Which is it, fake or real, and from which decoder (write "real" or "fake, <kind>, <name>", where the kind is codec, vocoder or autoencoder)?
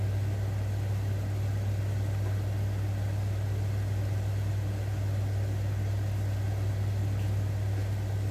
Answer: real